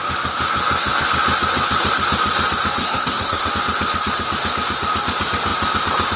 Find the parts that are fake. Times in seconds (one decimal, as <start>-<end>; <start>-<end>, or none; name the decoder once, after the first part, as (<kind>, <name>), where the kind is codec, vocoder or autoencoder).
2.8-3.5 (codec, SNAC)